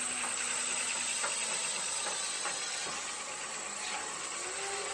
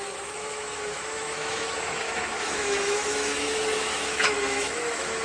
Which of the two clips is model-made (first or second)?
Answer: second